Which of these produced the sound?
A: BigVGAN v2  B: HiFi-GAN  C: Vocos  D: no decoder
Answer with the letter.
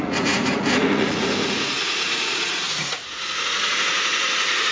C